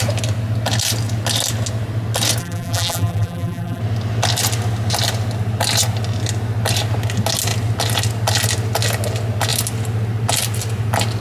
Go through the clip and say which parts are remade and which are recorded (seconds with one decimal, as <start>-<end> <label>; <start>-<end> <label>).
0.0-2.4 recorded; 2.4-3.8 remade; 3.8-11.2 recorded